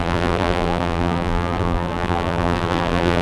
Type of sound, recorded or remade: remade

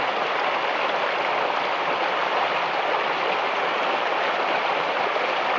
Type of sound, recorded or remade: recorded